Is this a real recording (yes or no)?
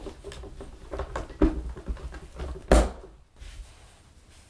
yes